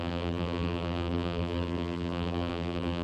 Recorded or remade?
remade